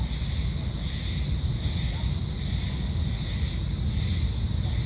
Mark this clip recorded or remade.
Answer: recorded